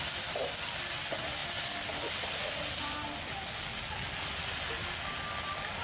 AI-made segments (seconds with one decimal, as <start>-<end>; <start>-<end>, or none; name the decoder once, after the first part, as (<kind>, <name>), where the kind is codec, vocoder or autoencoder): none